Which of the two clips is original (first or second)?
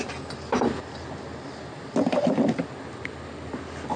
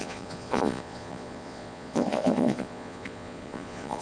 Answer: first